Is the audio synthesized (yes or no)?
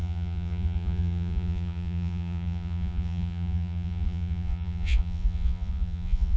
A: yes